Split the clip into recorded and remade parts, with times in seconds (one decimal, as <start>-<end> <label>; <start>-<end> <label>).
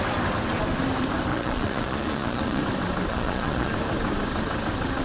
0.0-1.3 recorded; 1.3-2.6 remade; 2.6-3.1 recorded; 3.1-3.7 remade; 3.7-5.0 recorded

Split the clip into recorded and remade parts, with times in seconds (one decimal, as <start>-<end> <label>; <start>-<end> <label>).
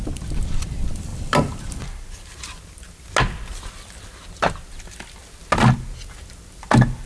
0.0-7.1 recorded